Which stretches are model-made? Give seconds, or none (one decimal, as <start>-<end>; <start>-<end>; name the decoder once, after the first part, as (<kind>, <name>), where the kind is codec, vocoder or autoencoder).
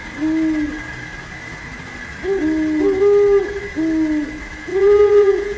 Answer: 4.7-5.6 (vocoder, Vocos)